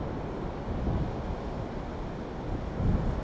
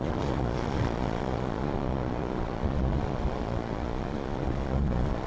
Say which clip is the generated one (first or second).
second